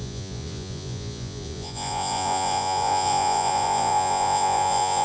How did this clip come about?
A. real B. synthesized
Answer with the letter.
B